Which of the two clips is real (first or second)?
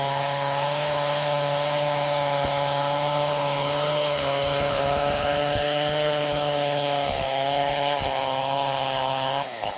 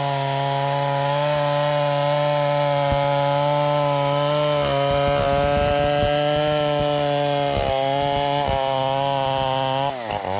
second